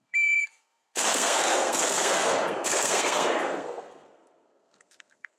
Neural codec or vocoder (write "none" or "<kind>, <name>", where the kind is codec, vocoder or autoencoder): codec, SNAC